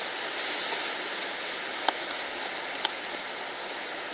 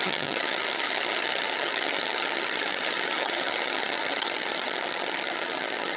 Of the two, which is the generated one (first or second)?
second